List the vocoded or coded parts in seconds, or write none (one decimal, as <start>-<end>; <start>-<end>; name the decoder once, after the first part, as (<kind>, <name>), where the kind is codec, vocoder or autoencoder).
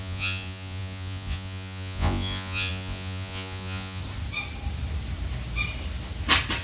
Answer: 0.0-4.0 (vocoder, Vocos)